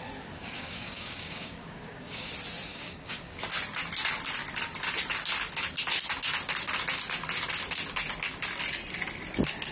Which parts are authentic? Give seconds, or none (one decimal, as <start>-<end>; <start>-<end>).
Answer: 0.0-0.4; 2.3-2.7; 3.4-9.7